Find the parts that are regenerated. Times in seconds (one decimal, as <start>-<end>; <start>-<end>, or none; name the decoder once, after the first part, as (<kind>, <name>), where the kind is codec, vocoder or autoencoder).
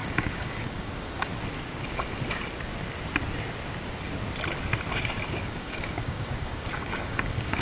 0.0-1.3 (codec, DAC); 5.4-7.6